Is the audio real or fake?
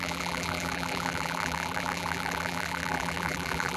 fake